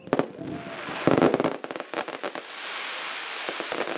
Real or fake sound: real